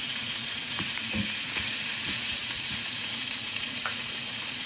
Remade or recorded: remade